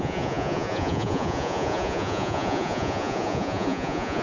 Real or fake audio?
fake